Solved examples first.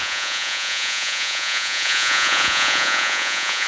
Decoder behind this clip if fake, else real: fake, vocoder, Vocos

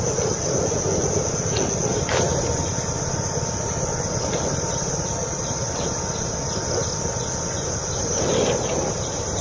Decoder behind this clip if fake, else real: real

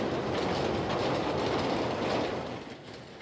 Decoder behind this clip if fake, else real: real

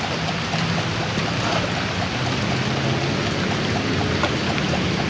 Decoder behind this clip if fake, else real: real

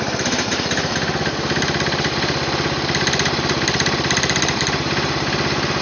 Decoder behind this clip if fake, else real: fake, vocoder, BigVGAN v2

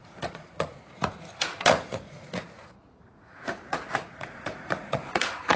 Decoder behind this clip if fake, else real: fake, vocoder, Vocos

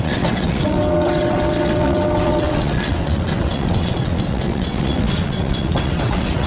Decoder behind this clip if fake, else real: fake, vocoder, WaveNeXt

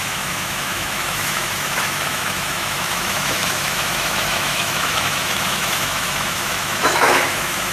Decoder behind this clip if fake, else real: fake, autoencoder, DAC-VAE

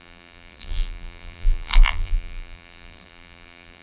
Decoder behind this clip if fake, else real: fake, vocoder, BigVGAN v2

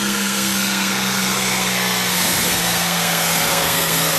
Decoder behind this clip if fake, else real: fake, codec, SNAC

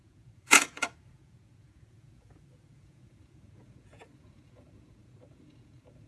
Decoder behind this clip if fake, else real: fake, vocoder, Vocos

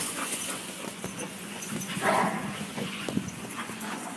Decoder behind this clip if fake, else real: fake, vocoder, Vocos